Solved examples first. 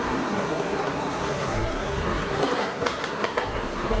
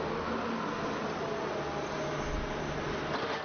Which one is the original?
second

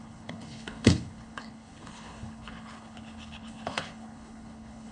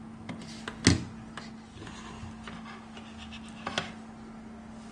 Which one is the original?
second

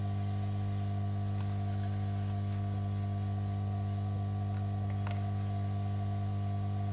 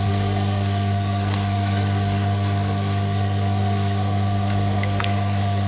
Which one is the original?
first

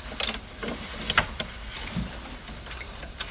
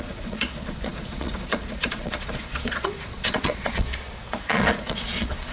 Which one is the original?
first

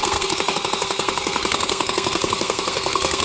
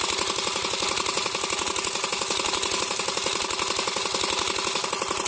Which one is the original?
second